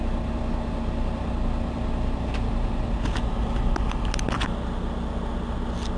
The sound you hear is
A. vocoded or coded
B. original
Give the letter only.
B